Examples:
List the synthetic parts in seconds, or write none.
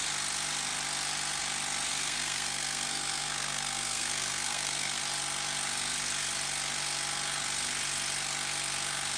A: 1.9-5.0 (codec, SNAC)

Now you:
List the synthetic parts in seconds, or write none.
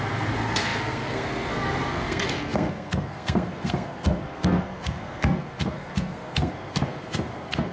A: 0.0-7.7 (codec, SNAC)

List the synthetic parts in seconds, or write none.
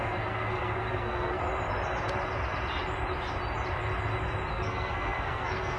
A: 0.0-1.4 (codec, SNAC); 4.5-5.8